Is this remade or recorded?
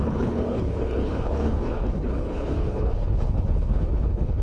remade